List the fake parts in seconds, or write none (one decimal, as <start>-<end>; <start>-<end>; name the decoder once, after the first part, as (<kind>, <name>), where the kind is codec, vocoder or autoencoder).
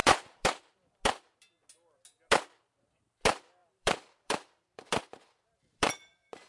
0.0-0.9 (vocoder, BigVGAN v2); 3.6-6.5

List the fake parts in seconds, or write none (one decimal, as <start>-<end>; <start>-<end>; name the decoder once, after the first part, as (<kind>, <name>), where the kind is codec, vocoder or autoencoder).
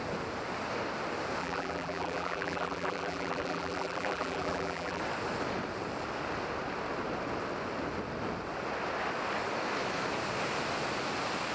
1.4-5.0 (vocoder, BigVGAN v2)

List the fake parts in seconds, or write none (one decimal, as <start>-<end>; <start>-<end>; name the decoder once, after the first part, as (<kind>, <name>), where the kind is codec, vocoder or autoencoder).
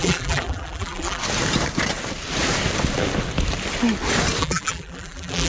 0.0-1.2 (vocoder, BigVGAN v2); 4.4-5.5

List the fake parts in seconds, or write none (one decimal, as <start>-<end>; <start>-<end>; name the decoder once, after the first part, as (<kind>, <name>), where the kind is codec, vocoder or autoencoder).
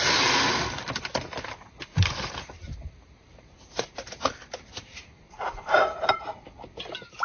1.9-6.1 (vocoder, BigVGAN v2)